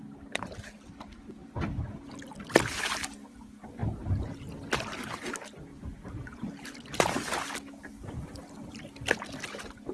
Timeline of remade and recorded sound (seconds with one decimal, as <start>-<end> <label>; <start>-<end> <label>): 0.0-9.9 recorded